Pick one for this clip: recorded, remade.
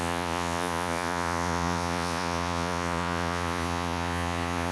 remade